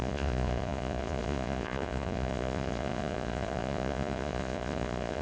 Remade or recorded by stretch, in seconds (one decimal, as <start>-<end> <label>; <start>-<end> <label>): 0.0-5.2 remade